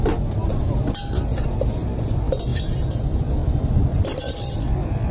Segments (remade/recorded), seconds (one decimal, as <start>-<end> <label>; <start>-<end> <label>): 0.0-2.5 recorded; 2.5-4.6 remade; 4.6-5.1 recorded